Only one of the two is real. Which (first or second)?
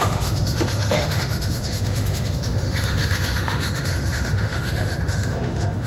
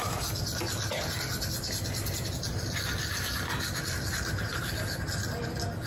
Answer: second